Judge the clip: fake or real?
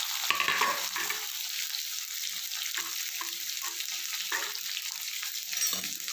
real